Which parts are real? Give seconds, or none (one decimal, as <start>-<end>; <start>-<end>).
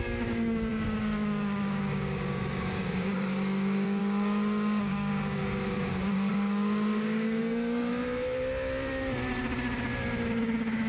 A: 5.4-5.9; 7.9-10.4